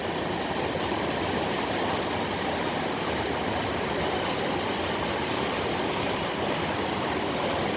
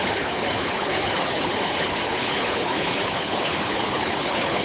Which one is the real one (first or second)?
first